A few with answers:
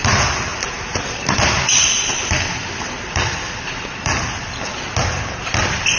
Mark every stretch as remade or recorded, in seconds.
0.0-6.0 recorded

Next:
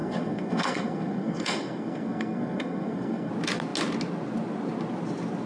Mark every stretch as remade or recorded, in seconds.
0.0-3.3 remade; 3.3-5.5 recorded

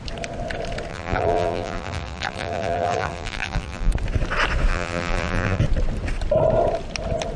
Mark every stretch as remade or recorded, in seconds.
0.0-0.9 recorded; 0.9-3.9 remade; 3.9-4.7 recorded; 4.7-5.6 remade; 5.6-7.4 recorded

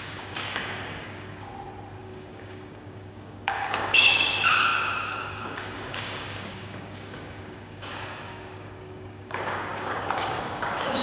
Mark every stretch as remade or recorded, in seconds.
0.0-1.5 remade; 1.5-2.0 recorded; 2.0-11.0 remade

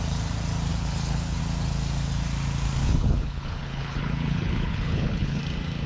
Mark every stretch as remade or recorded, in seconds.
0.0-0.7 recorded; 0.7-1.4 remade; 1.4-2.8 recorded; 2.8-5.4 remade; 5.4-5.9 recorded

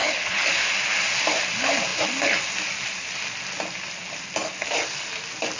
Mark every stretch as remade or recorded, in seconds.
0.0-0.5 remade; 0.5-5.6 recorded

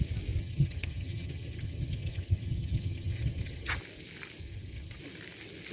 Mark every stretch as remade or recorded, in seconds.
0.0-0.4 recorded; 0.4-3.8 remade; 3.8-4.4 recorded; 4.4-5.0 remade; 5.0-5.7 recorded

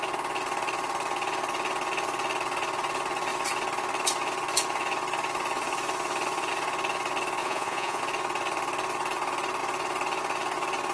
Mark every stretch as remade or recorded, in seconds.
0.0-7.4 recorded; 7.4-8.0 remade; 8.0-10.9 recorded